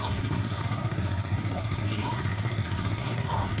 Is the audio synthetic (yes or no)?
yes